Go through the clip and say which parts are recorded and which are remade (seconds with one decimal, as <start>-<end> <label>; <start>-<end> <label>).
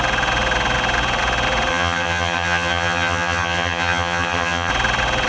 0.0-1.7 recorded; 1.7-4.7 remade; 4.7-5.3 recorded